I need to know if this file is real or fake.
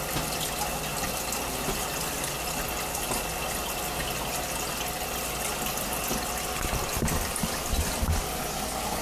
real